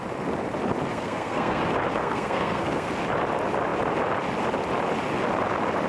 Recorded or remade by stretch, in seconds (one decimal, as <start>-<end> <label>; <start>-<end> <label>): 0.0-0.9 recorded; 0.9-1.6 remade; 1.6-2.0 recorded; 2.0-2.9 remade; 2.9-5.9 recorded